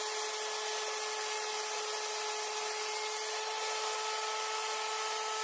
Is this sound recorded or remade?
recorded